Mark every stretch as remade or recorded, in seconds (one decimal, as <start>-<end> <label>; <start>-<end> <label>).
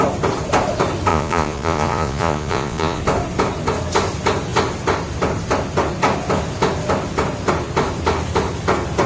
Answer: 0.0-1.1 recorded; 1.1-3.0 remade; 3.0-9.1 recorded